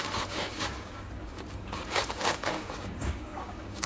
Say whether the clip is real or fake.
fake